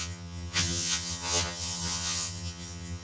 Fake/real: fake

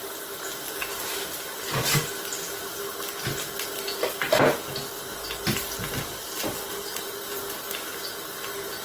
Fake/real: real